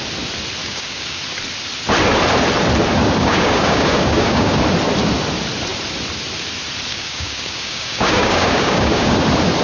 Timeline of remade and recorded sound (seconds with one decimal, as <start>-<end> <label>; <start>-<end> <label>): 0.0-0.6 recorded; 0.6-1.2 remade; 1.2-3.2 recorded; 3.2-4.6 remade; 4.6-6.9 recorded; 6.9-9.2 remade; 9.2-9.6 recorded